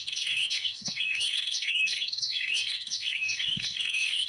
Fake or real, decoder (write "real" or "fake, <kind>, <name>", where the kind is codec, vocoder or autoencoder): fake, codec, DAC